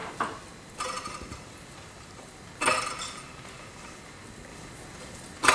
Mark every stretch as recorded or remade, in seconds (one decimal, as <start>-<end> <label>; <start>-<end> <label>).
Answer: 0.0-5.5 recorded